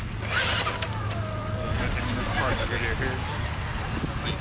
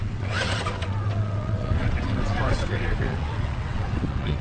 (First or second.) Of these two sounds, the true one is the first